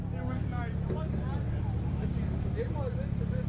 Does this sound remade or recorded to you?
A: recorded